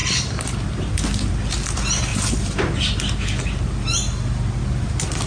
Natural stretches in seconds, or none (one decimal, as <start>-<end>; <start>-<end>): 0.0-5.3